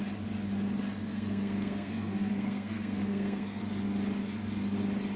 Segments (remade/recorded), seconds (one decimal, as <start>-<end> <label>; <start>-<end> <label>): 0.0-1.1 recorded; 1.1-3.6 remade; 3.6-5.2 recorded